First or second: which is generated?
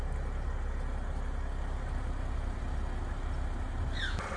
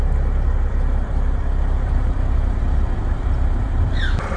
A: second